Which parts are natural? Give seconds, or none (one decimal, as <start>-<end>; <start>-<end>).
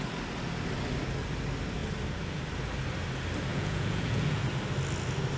0.0-3.5; 4.4-5.4